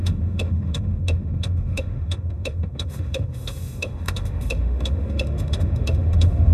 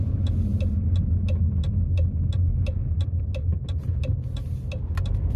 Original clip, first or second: second